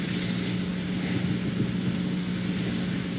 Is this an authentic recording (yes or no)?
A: yes